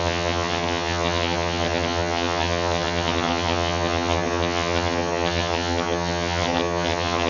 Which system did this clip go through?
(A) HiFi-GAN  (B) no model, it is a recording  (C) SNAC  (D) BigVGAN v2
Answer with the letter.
A